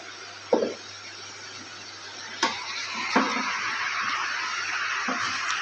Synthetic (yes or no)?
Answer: no